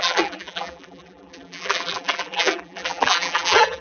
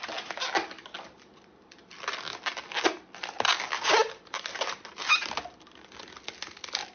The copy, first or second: first